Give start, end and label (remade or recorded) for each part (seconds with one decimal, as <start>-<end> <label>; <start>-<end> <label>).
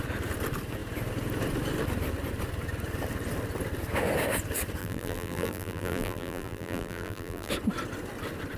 0.0-4.8 recorded; 4.8-7.5 remade; 7.5-8.6 recorded